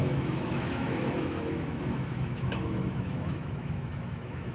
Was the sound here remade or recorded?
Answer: remade